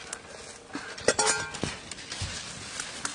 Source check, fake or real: real